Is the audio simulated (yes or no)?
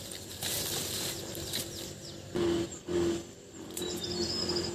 yes